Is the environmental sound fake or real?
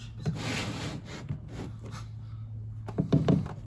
real